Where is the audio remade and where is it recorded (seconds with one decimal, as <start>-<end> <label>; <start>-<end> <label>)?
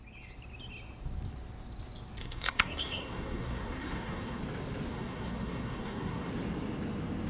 0.0-2.2 recorded; 2.2-4.4 remade; 4.4-4.9 recorded; 4.9-6.3 remade; 6.3-7.3 recorded